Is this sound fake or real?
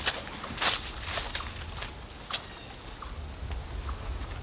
real